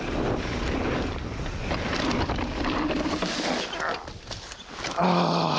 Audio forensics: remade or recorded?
recorded